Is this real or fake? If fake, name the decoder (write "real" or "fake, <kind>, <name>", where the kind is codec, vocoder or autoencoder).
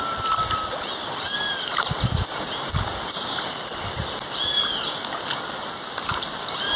real